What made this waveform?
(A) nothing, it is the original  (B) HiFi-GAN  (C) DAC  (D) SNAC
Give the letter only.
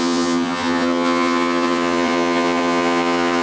B